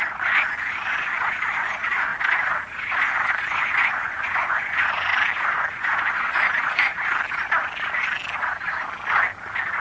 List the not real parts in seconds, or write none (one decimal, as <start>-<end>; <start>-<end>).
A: 0.0-2.1; 3.0-5.1; 5.7-6.9

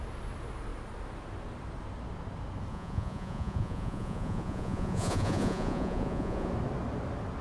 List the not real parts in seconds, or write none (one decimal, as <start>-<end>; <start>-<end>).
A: 2.7-6.5

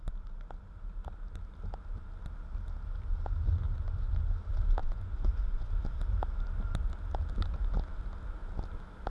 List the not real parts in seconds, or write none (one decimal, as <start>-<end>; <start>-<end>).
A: 4.8-5.7

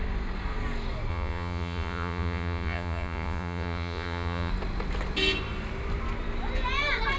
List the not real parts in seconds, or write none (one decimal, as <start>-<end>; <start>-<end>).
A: 1.1-4.5

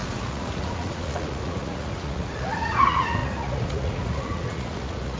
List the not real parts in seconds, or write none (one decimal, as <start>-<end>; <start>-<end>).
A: 0.0-5.2

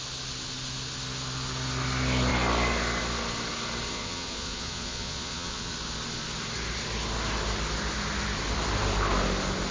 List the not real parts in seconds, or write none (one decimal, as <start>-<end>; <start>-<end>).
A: 3.9-5.7